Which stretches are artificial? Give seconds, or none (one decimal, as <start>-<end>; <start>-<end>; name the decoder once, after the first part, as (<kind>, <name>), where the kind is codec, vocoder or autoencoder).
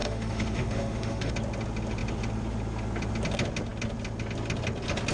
0.0-1.3 (autoencoder, DAC-VAE)